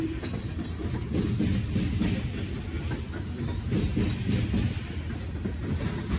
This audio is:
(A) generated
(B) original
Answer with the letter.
B